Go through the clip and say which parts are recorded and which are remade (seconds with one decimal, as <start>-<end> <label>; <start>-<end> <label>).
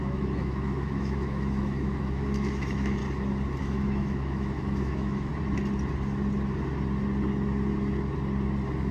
0.0-3.0 remade; 3.0-3.6 recorded; 3.6-5.3 remade; 5.3-8.9 recorded